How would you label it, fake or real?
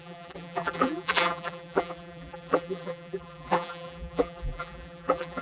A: fake